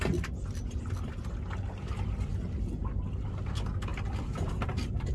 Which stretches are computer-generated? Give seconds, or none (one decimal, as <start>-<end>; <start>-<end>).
none